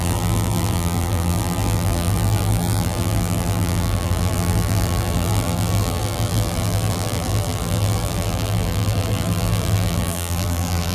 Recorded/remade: remade